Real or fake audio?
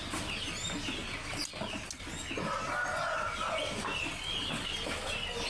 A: real